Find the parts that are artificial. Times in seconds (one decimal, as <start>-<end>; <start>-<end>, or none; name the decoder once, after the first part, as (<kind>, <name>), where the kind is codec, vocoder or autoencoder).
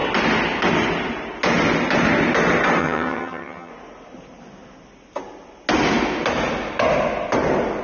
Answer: 2.8-3.7 (vocoder, HiFi-GAN)